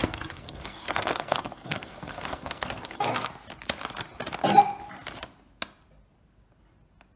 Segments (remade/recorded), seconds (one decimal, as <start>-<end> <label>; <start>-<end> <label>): 0.0-3.3 remade; 3.3-7.2 recorded